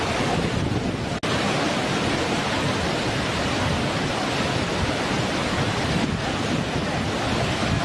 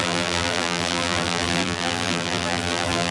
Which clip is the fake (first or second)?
second